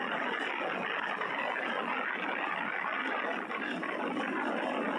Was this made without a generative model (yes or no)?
yes